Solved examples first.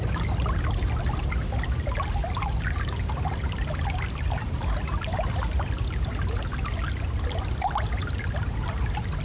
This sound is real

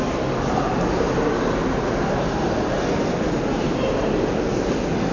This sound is real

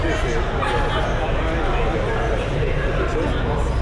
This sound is real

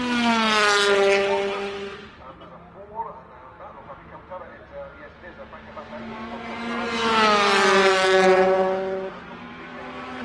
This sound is real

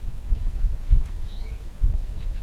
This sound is fake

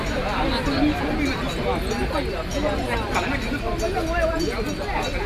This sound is real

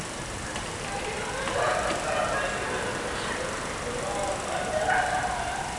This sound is real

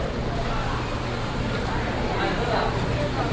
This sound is real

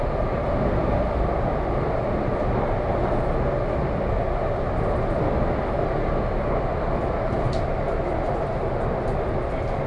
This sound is real